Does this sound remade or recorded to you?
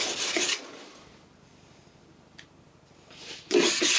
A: recorded